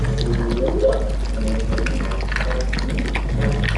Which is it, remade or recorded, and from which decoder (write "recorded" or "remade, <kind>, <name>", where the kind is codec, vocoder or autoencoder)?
recorded